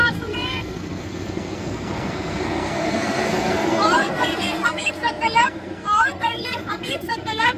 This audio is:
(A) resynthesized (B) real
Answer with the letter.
A